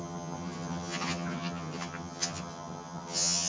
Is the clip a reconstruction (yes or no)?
yes